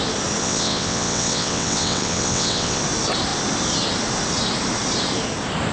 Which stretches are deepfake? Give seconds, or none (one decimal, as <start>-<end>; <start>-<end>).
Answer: 0.4-2.8